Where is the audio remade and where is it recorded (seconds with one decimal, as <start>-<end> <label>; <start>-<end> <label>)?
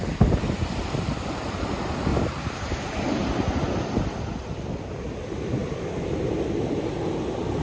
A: 0.0-2.1 recorded; 2.1-3.0 remade; 3.0-7.6 recorded